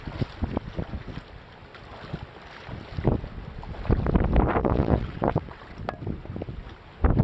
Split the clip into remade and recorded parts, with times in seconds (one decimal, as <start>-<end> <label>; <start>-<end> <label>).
0.0-4.6 recorded; 4.6-5.6 remade; 5.6-7.2 recorded